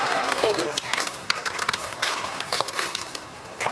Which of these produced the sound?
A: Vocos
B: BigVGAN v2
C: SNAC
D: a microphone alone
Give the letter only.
C